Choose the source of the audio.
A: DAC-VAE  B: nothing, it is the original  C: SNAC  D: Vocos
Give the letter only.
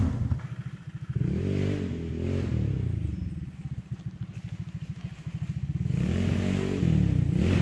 B